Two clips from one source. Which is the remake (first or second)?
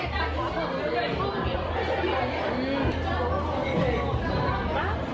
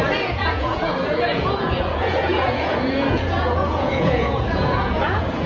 second